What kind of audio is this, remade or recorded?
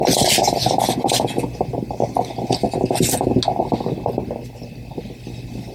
recorded